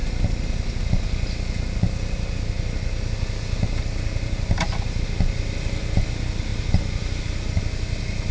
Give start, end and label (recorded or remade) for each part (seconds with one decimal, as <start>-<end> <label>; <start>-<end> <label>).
0.0-8.3 recorded